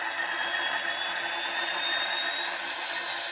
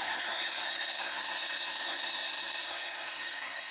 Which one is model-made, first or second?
second